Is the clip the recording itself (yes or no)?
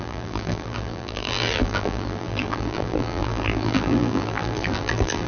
no